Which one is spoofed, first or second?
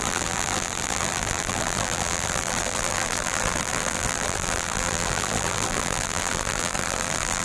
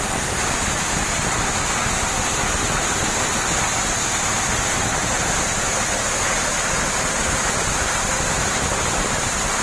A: first